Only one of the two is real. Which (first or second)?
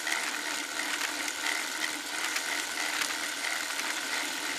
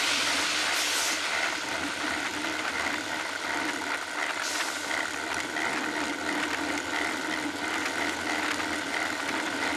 second